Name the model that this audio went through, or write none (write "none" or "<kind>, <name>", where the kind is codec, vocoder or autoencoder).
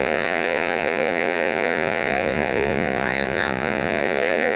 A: vocoder, Vocos